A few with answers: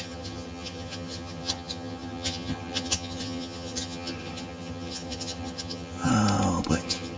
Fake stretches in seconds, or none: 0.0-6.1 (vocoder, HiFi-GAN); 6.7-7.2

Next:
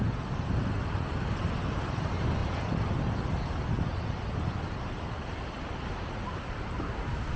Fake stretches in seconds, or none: none

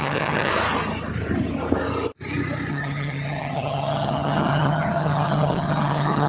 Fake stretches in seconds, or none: 0.0-0.5 (vocoder, HiFi-GAN); 2.7-6.3

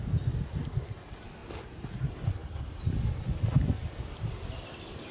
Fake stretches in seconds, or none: none

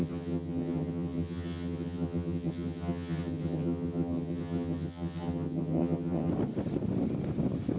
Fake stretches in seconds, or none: 0.0-6.3 (vocoder, HiFi-GAN)

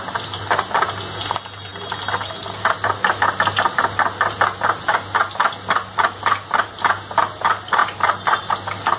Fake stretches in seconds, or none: none

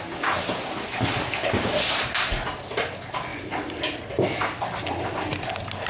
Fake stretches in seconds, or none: none

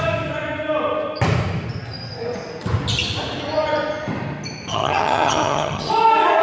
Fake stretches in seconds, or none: 4.7-5.9 (vocoder, HiFi-GAN)